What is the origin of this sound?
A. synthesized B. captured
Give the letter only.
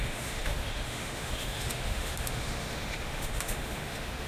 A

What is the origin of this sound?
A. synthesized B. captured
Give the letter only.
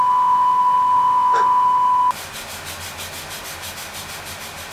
B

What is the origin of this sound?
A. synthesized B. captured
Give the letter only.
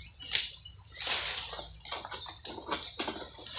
B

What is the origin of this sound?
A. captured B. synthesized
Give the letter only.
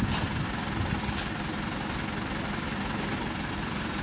A